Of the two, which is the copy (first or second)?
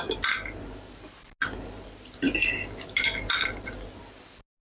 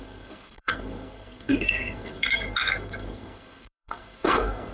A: second